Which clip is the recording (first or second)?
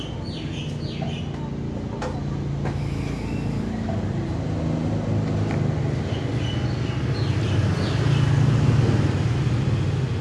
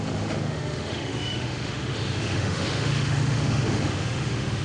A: first